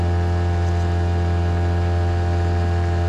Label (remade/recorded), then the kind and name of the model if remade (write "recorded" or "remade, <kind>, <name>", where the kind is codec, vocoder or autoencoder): recorded